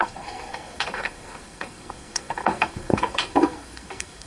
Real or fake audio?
fake